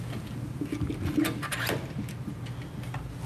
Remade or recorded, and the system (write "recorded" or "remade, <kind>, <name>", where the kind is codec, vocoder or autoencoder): recorded